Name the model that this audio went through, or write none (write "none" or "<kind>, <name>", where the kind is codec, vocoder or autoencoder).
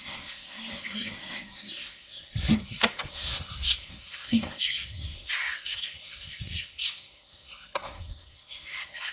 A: codec, SNAC